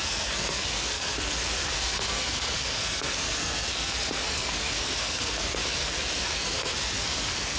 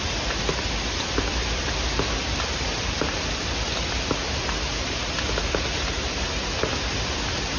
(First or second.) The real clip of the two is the second